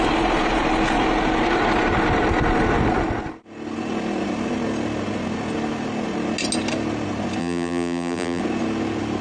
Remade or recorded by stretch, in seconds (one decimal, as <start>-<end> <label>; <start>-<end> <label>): 0.0-7.4 recorded; 7.4-8.4 remade; 8.4-9.2 recorded